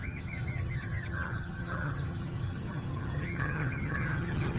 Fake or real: fake